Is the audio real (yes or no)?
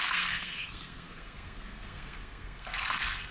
no